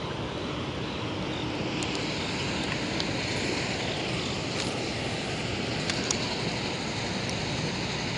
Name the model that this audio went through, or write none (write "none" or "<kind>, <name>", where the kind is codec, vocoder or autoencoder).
none